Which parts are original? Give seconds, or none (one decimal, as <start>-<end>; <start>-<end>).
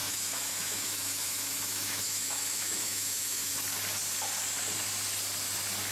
3.5-5.9